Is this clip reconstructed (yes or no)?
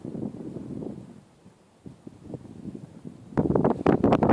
no